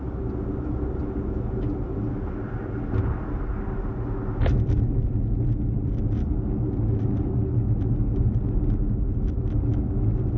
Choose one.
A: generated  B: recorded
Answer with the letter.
B